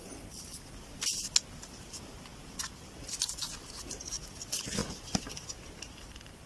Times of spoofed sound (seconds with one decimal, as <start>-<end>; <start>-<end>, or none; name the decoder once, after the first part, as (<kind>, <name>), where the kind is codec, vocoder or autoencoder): none